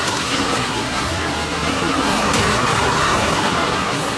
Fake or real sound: fake